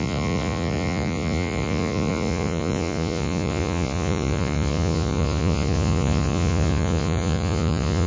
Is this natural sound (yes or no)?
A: no